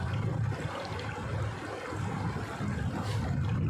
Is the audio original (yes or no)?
yes